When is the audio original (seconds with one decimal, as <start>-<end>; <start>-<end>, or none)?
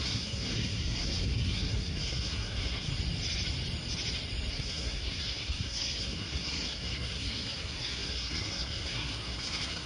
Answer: 2.9-4.5